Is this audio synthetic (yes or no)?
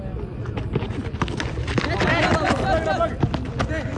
no